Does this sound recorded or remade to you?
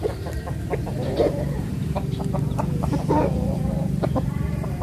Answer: remade